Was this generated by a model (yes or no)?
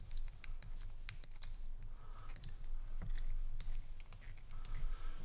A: no